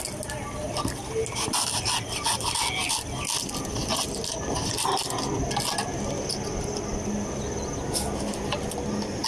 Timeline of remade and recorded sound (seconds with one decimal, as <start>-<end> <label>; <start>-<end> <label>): 0.0-9.3 recorded

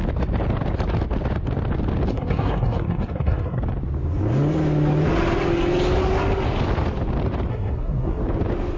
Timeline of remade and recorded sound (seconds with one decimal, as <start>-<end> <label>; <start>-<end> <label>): 0.0-2.1 recorded; 2.1-3.6 remade; 3.6-7.5 recorded; 7.5-8.2 remade; 8.2-8.8 recorded

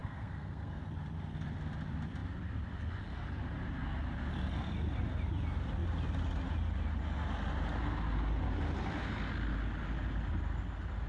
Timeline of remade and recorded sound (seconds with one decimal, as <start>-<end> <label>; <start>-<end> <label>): 0.0-0.8 remade; 0.8-11.1 recorded

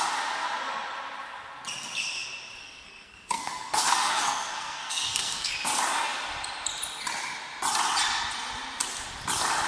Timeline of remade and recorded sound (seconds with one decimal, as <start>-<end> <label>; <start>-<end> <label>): 0.0-2.6 recorded; 2.6-5.5 remade; 5.5-9.7 recorded

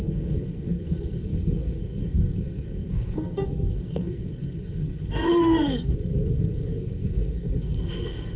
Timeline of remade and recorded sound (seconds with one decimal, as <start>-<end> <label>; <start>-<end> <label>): 0.0-8.4 remade

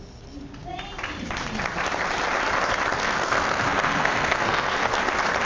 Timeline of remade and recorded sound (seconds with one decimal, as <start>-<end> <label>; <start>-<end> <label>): 0.0-3.0 recorded; 3.0-5.0 remade; 5.0-5.5 recorded

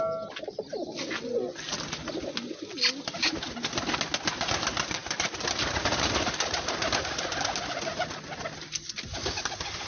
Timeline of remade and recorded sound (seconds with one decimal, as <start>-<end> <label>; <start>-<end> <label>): 0.0-9.9 recorded

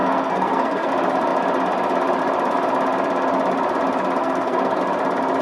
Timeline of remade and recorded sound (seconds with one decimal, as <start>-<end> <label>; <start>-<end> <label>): 0.0-0.9 remade; 0.9-4.2 recorded; 4.2-4.8 remade; 4.8-5.4 recorded